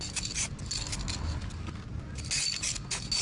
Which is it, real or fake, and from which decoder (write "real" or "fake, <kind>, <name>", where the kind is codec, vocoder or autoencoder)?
real